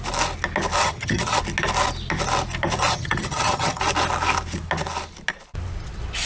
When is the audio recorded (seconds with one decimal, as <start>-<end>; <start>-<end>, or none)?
0.0-0.8; 1.4-2.9; 3.8-6.3